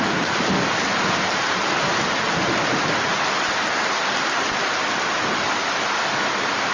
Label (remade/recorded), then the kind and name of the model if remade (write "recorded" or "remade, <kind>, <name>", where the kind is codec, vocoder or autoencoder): recorded